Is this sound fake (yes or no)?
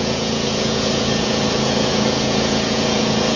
yes